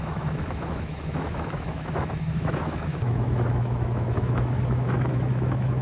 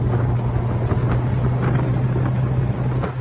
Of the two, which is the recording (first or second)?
second